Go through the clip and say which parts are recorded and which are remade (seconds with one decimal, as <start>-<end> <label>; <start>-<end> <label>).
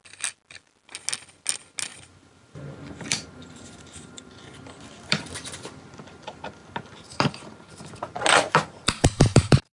0.0-1.9 recorded; 1.9-5.3 remade; 5.3-6.6 recorded; 6.6-9.7 remade